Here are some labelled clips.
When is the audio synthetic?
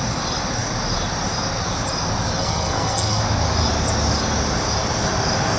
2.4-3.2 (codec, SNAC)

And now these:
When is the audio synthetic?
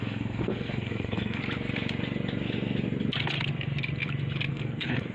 0.0-1.4 (codec, SNAC); 4.5-5.1